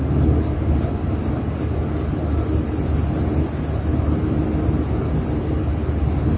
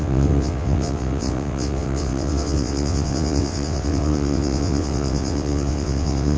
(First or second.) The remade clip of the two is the second